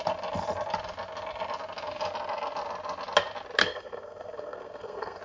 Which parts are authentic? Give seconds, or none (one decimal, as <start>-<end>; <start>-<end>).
0.0-3.6